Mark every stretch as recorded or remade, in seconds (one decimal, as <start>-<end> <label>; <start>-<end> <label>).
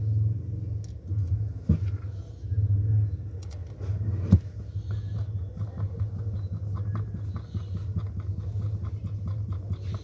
0.0-10.0 recorded